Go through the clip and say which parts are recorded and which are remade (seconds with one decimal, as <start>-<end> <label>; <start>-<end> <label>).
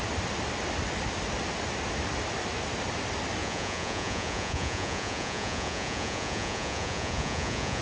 0.0-3.4 recorded; 3.4-7.8 remade